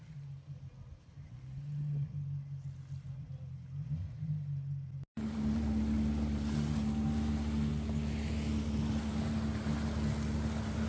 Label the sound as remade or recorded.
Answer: recorded